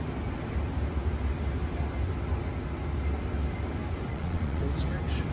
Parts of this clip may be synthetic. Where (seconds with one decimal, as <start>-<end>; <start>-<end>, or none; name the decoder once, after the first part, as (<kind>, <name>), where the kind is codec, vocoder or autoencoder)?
4.1-4.6 (vocoder, Vocos)